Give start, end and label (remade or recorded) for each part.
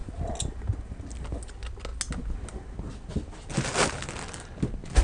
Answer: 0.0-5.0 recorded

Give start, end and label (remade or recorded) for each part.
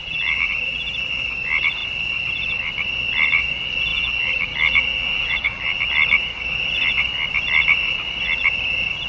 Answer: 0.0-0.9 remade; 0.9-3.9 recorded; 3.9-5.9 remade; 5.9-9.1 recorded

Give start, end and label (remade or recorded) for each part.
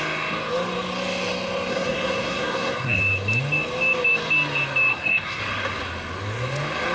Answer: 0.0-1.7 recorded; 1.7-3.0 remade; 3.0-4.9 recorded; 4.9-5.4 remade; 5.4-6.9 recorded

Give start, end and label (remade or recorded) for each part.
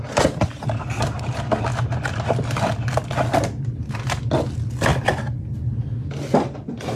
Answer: 0.0-7.0 recorded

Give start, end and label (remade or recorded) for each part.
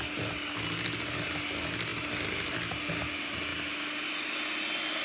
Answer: 0.0-5.0 recorded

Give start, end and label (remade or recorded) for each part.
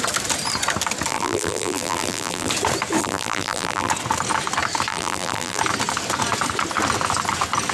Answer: 0.0-1.1 recorded; 1.1-2.5 remade; 2.5-3.0 recorded; 3.0-3.9 remade; 3.9-4.9 recorded; 4.9-5.6 remade; 5.6-7.7 recorded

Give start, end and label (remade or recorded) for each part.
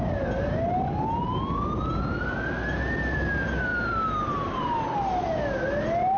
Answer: 0.0-3.7 recorded; 3.7-4.6 remade; 4.6-6.2 recorded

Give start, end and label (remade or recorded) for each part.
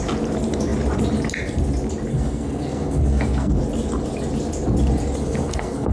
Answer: 0.0-2.1 recorded; 2.1-3.6 remade; 3.6-5.2 recorded; 5.2-5.9 remade